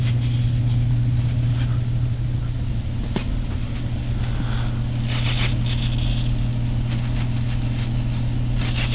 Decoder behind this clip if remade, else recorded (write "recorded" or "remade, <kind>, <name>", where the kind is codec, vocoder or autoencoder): recorded